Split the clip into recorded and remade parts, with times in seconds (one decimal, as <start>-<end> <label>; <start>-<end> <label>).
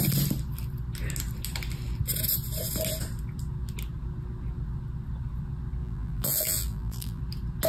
0.0-5.8 recorded; 5.8-7.2 remade; 7.2-7.7 recorded